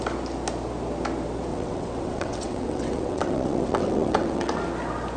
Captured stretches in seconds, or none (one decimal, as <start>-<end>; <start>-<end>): 0.0-1.5; 4.6-5.2